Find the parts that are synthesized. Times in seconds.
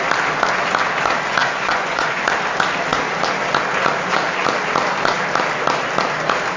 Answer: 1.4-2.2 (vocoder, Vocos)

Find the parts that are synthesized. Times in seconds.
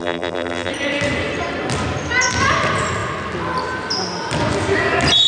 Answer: 0.0-0.7 (vocoder, BigVGAN v2)